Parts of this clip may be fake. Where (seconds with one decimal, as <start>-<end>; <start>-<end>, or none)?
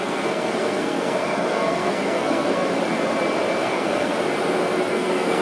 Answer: 0.0-2.6; 3.6-4.1; 4.9-5.4